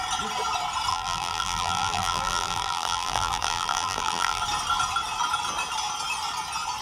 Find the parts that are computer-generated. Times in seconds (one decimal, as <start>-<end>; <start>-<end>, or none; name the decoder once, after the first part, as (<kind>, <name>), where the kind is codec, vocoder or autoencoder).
0.9-4.4 (vocoder, BigVGAN v2)